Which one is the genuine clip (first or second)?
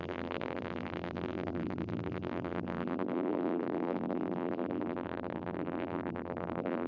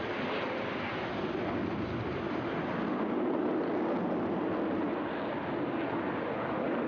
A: second